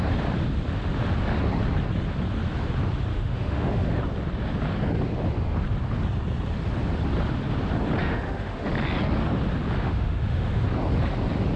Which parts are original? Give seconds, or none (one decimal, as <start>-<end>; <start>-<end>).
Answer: 0.0-3.1; 4.0-8.0; 8.7-9.8; 10.6-11.6